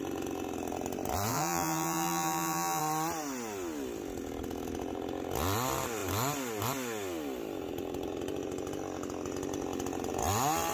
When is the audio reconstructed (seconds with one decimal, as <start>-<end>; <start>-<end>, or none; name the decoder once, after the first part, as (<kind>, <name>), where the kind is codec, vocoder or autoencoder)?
1.3-2.8 (vocoder, BigVGAN v2)